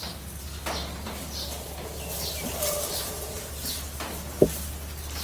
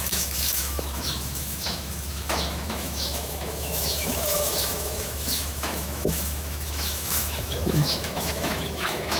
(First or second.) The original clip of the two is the first